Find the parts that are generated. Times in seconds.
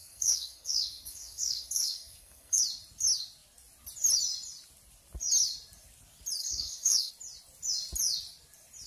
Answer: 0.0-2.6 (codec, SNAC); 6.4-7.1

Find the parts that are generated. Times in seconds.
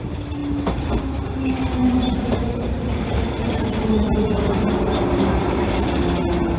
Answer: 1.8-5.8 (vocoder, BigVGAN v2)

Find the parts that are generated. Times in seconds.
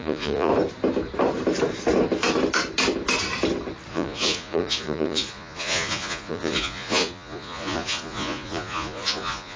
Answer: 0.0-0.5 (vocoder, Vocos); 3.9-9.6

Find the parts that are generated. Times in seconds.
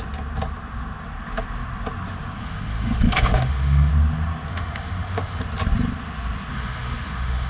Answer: 2.4-3.9 (autoencoder, DAC-VAE); 4.5-5.4; 6.5-7.5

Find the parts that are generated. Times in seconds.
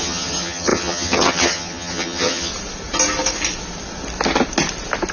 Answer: 0.0-2.5 (vocoder, HiFi-GAN)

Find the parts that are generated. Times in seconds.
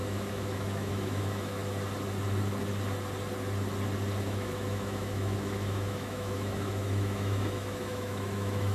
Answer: 0.0-1.6 (autoencoder, DAC-VAE); 4.2-8.7